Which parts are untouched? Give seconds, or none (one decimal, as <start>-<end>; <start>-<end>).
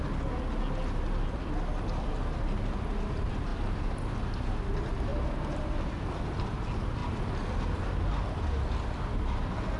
0.0-9.8